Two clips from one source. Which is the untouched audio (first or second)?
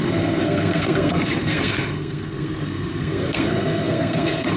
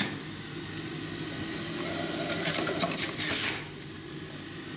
second